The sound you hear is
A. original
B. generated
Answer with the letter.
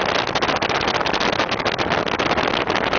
A